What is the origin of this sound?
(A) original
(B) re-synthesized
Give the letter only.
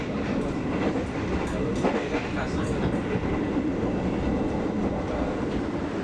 A